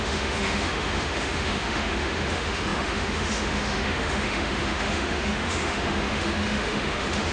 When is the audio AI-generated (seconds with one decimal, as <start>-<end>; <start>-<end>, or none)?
0.0-7.3